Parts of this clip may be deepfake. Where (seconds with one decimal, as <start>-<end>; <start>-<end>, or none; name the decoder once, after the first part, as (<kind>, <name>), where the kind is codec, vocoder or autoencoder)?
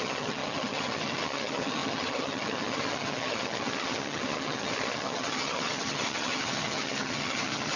0.0-7.8 (vocoder, HiFi-GAN)